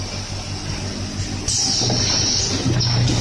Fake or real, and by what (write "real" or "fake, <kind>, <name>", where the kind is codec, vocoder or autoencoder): real